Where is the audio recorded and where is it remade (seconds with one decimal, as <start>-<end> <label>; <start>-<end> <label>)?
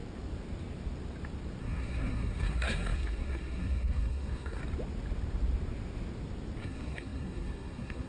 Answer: 0.0-1.6 recorded; 1.6-4.6 remade; 4.6-6.6 recorded; 6.6-8.1 remade